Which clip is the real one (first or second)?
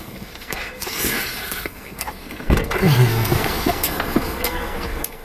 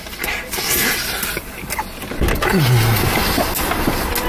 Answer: second